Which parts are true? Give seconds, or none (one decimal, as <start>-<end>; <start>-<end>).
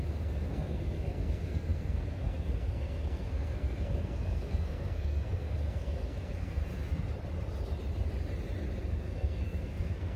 6.6-8.8